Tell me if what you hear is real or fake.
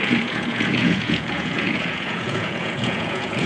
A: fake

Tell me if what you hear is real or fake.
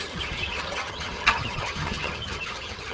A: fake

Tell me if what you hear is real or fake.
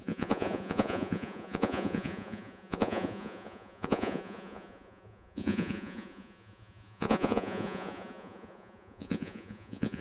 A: fake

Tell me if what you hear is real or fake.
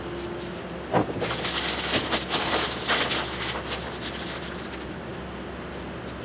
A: real